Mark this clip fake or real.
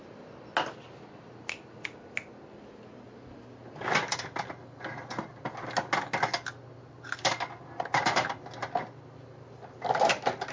real